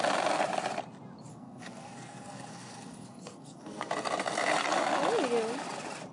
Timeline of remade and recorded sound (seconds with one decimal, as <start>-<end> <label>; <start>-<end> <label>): 0.0-1.3 recorded; 1.3-3.9 remade; 3.9-6.1 recorded